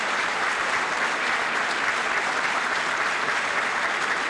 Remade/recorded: recorded